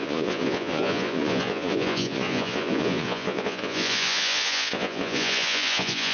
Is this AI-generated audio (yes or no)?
yes